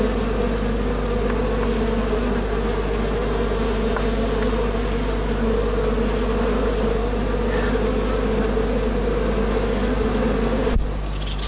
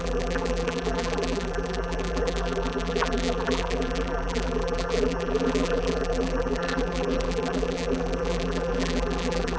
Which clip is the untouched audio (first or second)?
first